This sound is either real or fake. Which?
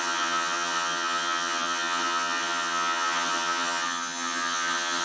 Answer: fake